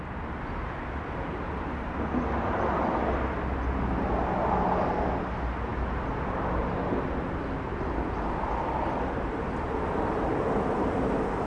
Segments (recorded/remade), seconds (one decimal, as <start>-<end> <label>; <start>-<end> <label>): 0.0-11.5 recorded